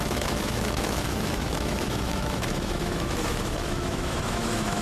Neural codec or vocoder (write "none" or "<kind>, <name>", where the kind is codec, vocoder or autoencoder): autoencoder, DAC-VAE